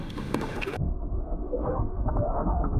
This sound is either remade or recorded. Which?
remade